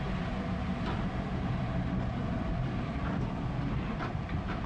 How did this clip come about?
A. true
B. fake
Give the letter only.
A